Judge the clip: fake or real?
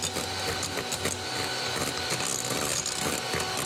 real